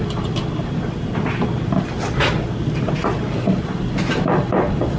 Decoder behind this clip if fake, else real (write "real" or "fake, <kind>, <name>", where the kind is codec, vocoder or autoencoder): real